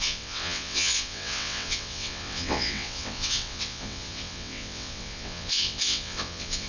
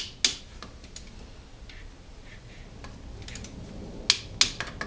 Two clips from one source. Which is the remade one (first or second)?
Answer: first